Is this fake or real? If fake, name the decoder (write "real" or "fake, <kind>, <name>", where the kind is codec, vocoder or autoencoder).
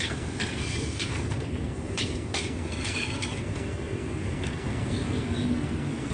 fake, codec, SNAC